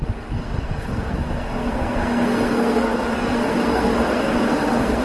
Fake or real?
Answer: fake